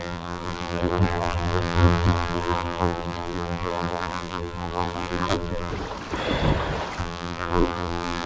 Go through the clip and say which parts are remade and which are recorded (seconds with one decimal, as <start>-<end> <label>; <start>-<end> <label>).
0.0-5.7 remade; 5.7-7.0 recorded; 7.0-8.3 remade